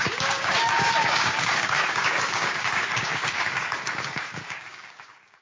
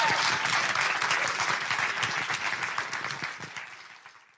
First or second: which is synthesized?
first